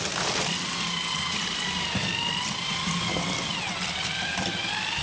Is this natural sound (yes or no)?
yes